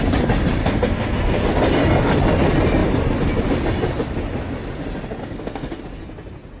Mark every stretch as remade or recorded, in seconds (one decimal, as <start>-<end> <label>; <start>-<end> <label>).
0.0-0.6 recorded; 0.6-1.5 remade; 1.5-5.2 recorded; 5.2-5.8 remade; 5.8-6.6 recorded

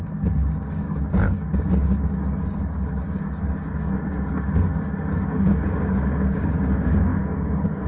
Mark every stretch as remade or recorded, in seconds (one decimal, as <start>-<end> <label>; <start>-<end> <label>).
0.0-7.9 remade